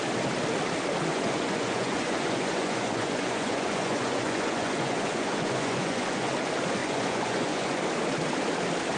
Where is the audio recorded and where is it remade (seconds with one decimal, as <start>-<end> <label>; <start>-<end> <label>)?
0.0-1.1 recorded; 1.1-6.3 remade; 6.3-6.8 recorded; 6.8-7.8 remade; 7.8-9.0 recorded

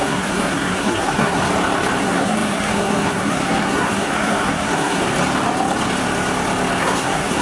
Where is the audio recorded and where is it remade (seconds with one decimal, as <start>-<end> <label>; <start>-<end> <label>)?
0.0-1.4 remade; 1.4-2.0 recorded; 2.0-5.0 remade; 5.0-6.8 recorded; 6.8-7.4 remade

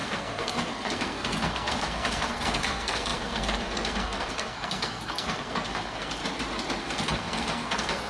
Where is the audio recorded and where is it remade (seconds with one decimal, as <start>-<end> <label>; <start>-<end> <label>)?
0.0-6.2 remade; 6.2-6.8 recorded; 6.8-8.1 remade

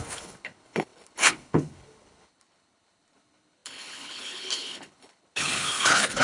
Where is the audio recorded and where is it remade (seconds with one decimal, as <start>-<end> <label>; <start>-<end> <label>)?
0.0-6.2 remade